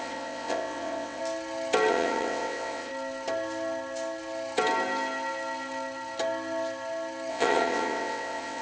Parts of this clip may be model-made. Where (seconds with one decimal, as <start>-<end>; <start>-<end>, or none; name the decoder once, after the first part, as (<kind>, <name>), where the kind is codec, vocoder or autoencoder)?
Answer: 0.0-1.2 (vocoder, WaveNeXt); 1.9-2.9; 7.3-8.6